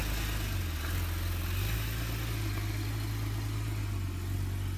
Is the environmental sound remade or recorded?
recorded